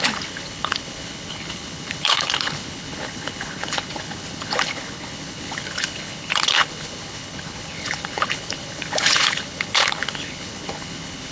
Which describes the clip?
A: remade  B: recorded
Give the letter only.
A